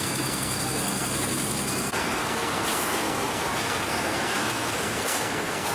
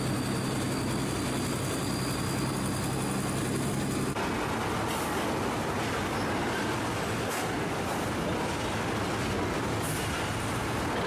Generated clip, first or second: first